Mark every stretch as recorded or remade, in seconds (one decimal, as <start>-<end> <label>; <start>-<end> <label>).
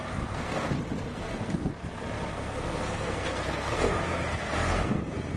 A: 0.0-0.7 remade; 0.7-1.1 recorded; 1.1-1.7 remade; 1.7-2.3 recorded; 2.3-5.4 remade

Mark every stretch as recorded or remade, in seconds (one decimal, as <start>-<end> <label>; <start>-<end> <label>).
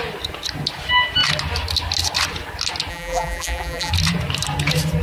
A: 0.0-2.9 recorded; 2.9-3.9 remade; 3.9-5.0 recorded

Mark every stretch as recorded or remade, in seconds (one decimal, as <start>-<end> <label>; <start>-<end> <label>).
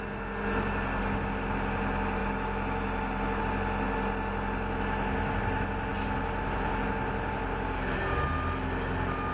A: 0.0-9.3 recorded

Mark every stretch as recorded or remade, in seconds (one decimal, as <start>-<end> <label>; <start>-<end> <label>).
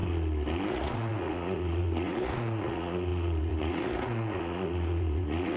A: 0.0-0.7 recorded; 0.7-5.6 remade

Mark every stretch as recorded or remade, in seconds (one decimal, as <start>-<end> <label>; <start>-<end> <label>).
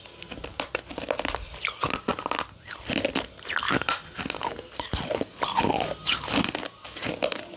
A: 0.0-7.6 recorded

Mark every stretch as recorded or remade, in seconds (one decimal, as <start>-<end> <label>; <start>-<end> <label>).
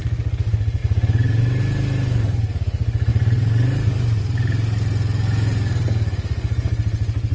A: 0.0-7.3 recorded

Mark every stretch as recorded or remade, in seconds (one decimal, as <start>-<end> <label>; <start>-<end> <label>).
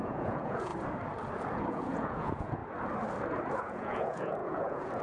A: 0.0-0.7 remade; 0.7-1.7 recorded; 1.7-2.6 remade; 2.6-3.6 recorded; 3.6-5.0 remade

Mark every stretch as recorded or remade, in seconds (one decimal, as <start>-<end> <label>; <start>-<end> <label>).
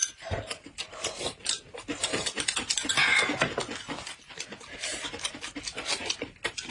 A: 0.0-6.7 recorded